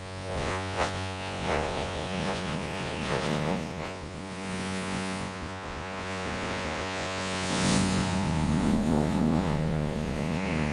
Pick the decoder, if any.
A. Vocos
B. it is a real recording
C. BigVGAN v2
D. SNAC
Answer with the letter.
A